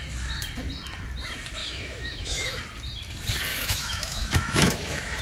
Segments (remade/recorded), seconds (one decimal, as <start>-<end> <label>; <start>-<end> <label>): 0.0-1.6 recorded; 1.6-2.6 remade; 2.6-3.5 recorded; 3.5-5.2 remade